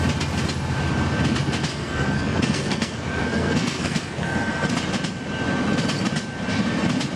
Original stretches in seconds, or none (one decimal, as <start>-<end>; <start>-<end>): 0.0-1.7; 4.7-7.2